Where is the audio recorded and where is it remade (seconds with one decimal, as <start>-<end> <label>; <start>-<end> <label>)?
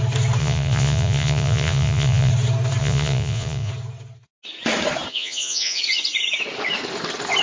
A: 0.0-0.4 recorded; 0.4-2.3 remade; 2.3-2.8 recorded; 2.8-3.7 remade; 3.7-5.1 recorded; 5.1-5.8 remade; 5.8-7.4 recorded